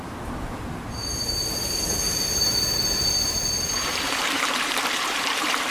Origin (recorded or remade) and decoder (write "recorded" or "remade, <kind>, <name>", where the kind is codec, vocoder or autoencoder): remade, vocoder, BigVGAN v2